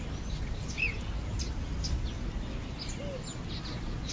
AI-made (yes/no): no